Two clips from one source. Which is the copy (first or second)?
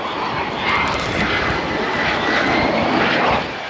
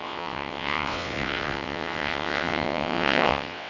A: second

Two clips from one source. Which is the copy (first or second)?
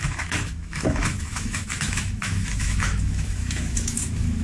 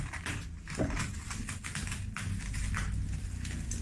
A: first